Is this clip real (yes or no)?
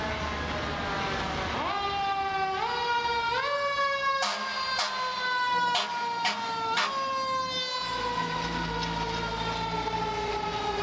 yes